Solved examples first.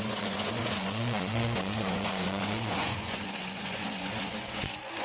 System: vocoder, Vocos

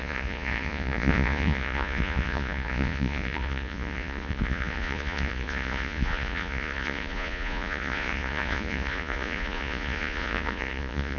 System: vocoder, Vocos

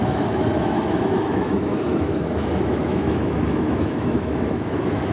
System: autoencoder, DAC-VAE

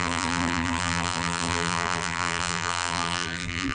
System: vocoder, BigVGAN v2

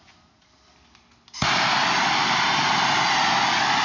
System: none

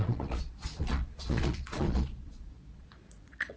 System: vocoder, Vocos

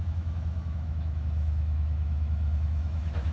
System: autoencoder, DAC-VAE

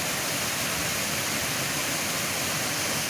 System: none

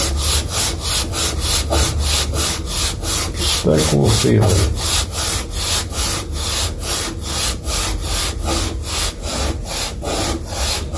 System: none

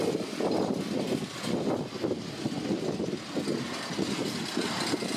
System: none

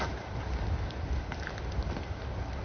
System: none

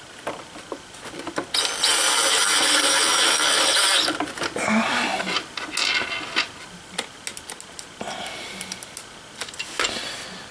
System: none